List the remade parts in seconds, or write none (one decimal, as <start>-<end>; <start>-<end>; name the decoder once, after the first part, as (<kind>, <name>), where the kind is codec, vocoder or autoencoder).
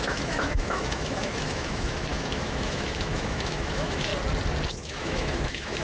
0.0-4.1 (autoencoder, DAC-VAE); 4.7-5.8